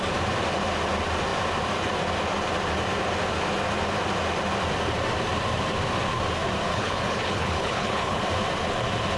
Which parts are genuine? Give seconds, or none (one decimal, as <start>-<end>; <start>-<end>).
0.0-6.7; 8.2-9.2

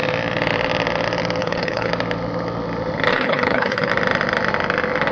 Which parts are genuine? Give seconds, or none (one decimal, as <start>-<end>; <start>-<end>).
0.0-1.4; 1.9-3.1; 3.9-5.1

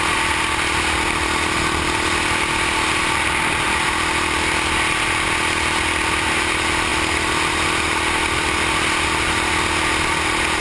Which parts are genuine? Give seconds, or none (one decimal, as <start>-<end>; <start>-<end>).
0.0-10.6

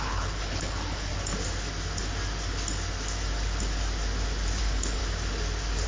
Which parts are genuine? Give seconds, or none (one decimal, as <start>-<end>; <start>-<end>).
1.1-4.6; 5.0-5.9

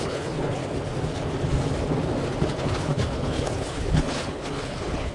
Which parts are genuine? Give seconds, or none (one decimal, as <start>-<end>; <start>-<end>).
0.6-2.5

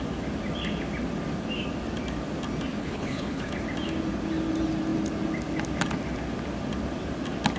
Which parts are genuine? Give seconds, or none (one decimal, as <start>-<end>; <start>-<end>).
0.0-2.8; 3.5-7.6

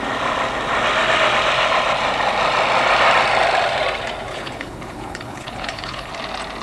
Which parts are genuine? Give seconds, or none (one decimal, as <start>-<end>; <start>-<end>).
0.0-4.3; 6.1-6.6

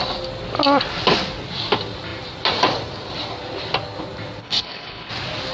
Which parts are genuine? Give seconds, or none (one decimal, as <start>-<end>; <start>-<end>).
0.0-4.4; 5.1-5.5